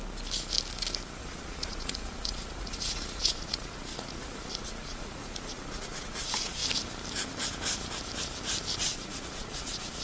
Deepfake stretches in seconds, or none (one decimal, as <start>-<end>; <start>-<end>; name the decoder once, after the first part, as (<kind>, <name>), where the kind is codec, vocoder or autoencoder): 1.2-6.6 (vocoder, Vocos); 8.8-10.0